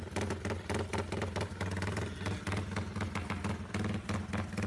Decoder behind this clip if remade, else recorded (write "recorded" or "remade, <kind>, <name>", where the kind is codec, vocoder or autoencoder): recorded